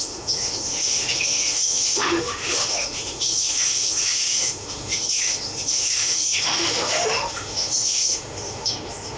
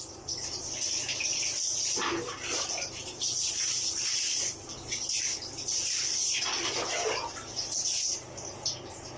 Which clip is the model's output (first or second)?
first